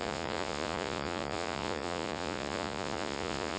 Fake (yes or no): yes